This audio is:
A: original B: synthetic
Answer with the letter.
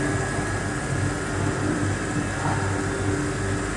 A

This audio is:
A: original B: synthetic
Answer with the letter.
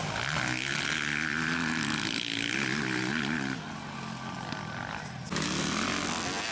A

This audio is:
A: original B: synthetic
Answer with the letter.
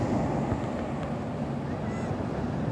A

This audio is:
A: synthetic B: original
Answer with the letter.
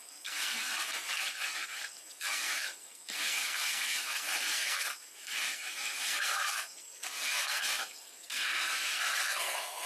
A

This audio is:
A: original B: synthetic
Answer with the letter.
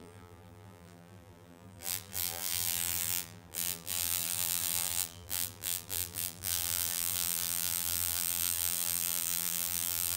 B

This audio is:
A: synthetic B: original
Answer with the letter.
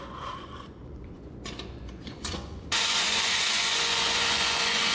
A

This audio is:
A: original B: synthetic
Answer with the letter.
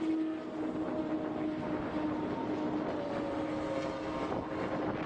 A